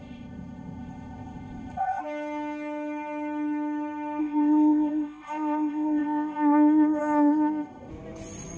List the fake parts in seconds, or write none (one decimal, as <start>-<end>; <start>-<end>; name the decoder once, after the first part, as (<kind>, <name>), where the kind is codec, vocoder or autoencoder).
0.0-2.0 (codec, ZipCodec); 4.2-7.9